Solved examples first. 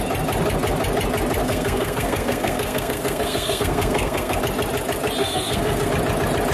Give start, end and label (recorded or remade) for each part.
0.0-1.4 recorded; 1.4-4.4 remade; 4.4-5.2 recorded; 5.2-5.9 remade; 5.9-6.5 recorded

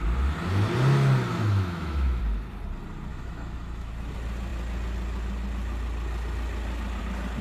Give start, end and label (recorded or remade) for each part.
0.0-1.3 recorded; 1.3-2.2 remade; 2.2-3.1 recorded; 3.1-3.9 remade; 3.9-7.4 recorded

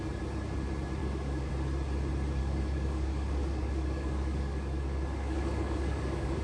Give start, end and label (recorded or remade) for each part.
0.0-1.0 recorded; 1.0-1.5 remade; 1.5-2.4 recorded; 2.4-6.4 remade

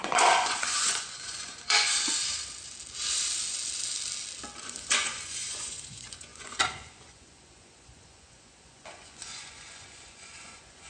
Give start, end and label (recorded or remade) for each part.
0.0-1.9 remade; 1.9-4.6 recorded; 4.6-10.9 remade

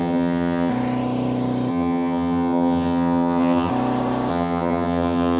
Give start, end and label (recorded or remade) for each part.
0.0-0.7 remade; 0.7-1.7 recorded; 1.7-3.7 remade; 3.7-4.3 recorded; 4.3-5.4 remade

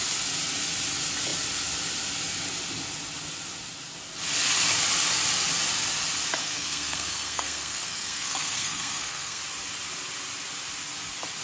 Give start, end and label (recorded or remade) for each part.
0.0-6.4 recorded; 6.4-9.4 remade; 9.4-11.4 recorded